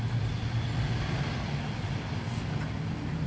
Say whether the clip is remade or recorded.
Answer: recorded